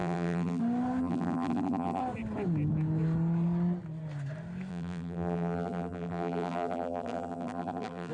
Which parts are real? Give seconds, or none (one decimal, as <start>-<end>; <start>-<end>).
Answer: 0.6-1.0; 2.0-4.7